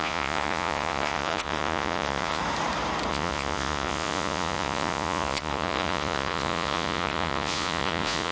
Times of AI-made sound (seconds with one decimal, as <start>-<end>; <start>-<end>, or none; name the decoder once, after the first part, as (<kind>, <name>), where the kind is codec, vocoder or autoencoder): 0.0-2.4 (vocoder, Vocos); 3.1-8.3

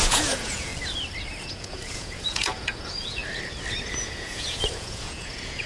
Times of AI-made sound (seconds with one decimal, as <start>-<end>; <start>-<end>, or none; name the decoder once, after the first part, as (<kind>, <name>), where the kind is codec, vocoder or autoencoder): 0.0-0.7 (vocoder, Vocos); 1.4-3.2; 4.0-5.7

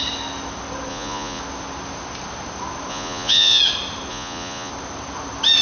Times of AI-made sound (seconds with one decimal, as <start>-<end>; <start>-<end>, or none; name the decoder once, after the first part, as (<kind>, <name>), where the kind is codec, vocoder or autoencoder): 0.9-1.4 (vocoder, Vocos); 2.9-3.6; 4.1-4.7

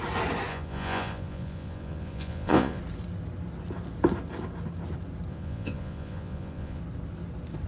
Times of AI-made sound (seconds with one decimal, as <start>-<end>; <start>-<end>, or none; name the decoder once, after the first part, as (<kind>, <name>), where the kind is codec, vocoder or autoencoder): 0.5-2.8 (vocoder, Vocos); 5.3-6.8

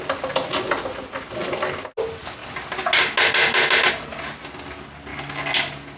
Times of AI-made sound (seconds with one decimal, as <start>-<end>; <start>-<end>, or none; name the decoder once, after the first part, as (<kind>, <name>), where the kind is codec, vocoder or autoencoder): none

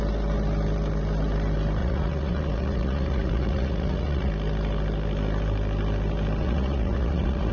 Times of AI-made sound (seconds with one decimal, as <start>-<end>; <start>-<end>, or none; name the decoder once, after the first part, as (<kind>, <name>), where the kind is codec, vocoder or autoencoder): 1.8-4.3 (vocoder, Vocos); 6.4-7.5

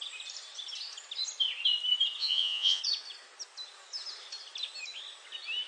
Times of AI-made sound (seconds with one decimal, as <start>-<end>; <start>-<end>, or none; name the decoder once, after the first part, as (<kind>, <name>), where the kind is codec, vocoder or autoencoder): 2.2-2.8 (vocoder, Vocos)

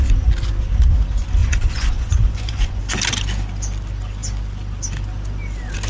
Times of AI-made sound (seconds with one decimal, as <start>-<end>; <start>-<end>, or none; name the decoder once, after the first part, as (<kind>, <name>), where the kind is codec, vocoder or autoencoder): 1.4-2.8 (vocoder, Vocos)